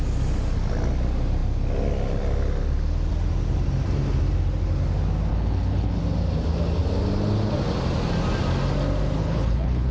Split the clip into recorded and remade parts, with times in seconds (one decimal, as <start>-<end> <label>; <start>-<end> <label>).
0.0-5.3 recorded; 5.3-6.0 remade; 6.0-9.2 recorded; 9.2-9.9 remade